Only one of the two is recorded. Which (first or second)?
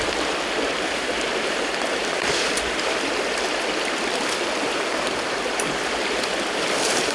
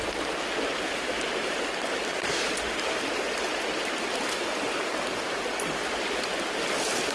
second